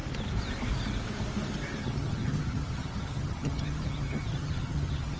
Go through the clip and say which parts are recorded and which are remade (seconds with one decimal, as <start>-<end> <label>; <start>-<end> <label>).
0.0-1.8 recorded; 1.8-5.2 remade